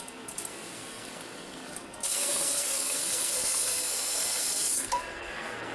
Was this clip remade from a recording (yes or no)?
yes